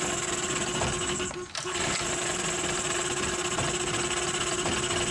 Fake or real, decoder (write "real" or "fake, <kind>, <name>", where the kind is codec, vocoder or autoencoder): real